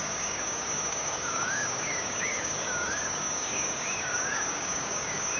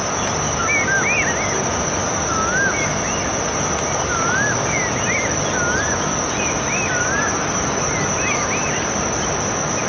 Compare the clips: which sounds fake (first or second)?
first